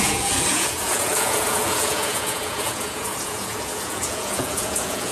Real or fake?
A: fake